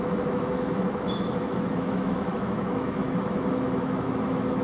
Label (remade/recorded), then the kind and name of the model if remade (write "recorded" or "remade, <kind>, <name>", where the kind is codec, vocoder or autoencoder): remade, autoencoder, DAC-VAE